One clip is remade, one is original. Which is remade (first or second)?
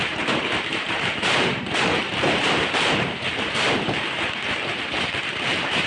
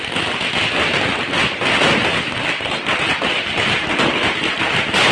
first